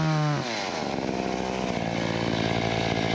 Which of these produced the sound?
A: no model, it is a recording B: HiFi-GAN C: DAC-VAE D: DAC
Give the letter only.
A